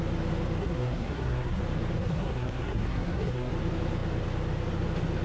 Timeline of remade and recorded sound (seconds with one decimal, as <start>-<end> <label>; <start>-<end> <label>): 0.0-0.6 recorded; 0.6-1.6 remade; 1.6-2.0 recorded; 2.0-3.5 remade; 3.5-5.2 recorded

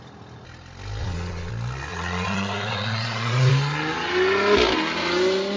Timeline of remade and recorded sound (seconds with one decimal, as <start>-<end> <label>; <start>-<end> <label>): 0.0-1.0 recorded; 1.0-1.5 remade; 1.5-1.9 recorded; 1.9-3.5 remade; 3.5-5.6 recorded

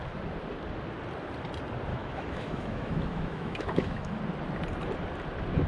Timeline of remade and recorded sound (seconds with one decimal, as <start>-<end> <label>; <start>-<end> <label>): 0.0-1.9 recorded; 1.9-4.2 remade; 4.2-5.7 recorded

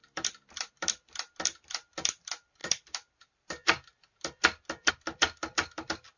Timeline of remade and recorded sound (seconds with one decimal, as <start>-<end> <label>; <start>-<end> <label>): 0.0-6.2 remade

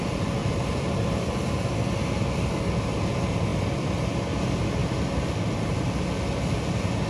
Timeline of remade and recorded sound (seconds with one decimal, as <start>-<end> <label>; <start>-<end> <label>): 0.0-0.4 recorded; 0.4-1.7 remade; 1.7-3.5 recorded; 3.5-4.1 remade; 4.1-7.1 recorded